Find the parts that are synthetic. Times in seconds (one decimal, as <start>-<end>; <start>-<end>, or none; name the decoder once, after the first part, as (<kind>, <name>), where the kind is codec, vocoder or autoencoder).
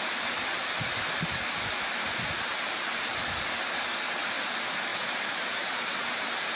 4.9-6.6 (vocoder, BigVGAN v2)